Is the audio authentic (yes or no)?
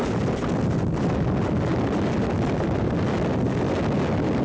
yes